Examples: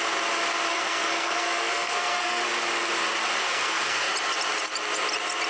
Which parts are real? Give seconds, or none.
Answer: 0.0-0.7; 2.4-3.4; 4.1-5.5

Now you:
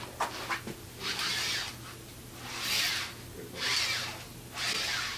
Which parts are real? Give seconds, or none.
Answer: 0.0-5.2

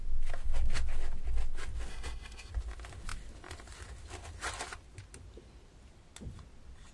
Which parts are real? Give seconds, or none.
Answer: 0.0-1.9; 2.5-6.9

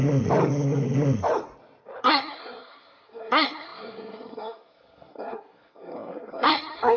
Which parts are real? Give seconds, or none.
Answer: 0.0-2.0